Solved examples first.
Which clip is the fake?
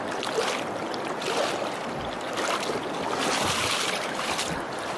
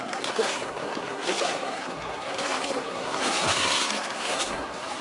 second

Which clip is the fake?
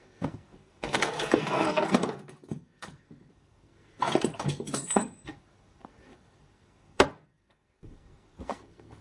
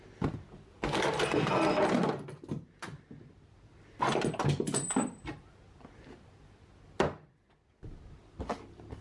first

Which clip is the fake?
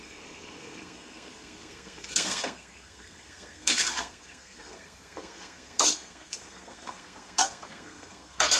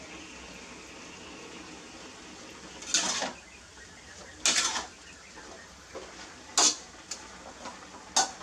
first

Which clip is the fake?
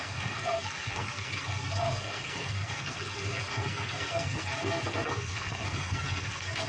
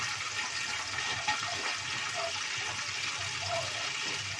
first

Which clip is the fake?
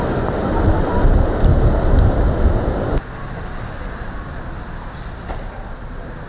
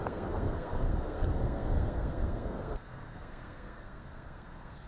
second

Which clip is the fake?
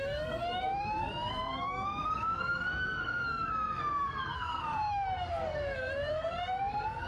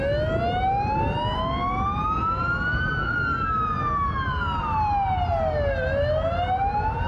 first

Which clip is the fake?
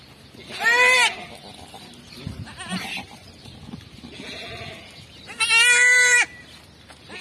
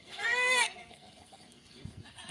second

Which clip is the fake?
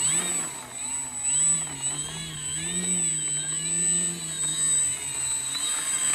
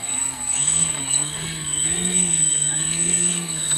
second